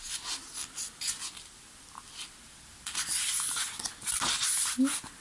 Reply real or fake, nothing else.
real